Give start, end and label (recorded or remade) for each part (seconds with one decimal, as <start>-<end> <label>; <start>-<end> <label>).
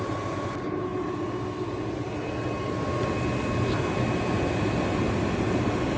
0.0-6.0 recorded